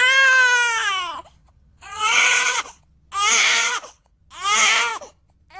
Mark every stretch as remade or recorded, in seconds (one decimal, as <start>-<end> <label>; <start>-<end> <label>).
0.0-1.4 recorded; 1.4-2.8 remade; 2.8-3.6 recorded; 3.6-4.2 remade; 4.2-5.6 recorded